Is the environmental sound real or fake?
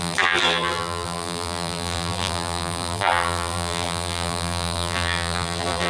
fake